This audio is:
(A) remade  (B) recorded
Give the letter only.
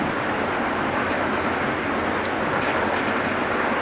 B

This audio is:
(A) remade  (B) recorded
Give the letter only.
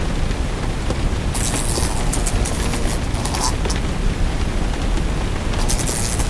B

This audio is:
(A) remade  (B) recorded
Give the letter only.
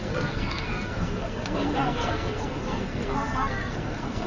A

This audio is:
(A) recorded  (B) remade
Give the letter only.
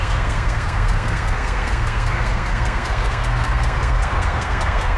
B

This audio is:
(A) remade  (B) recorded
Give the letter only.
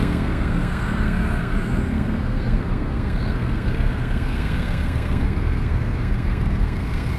A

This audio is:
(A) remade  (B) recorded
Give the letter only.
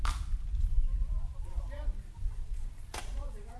B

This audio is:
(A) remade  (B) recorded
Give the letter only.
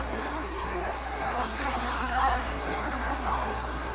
A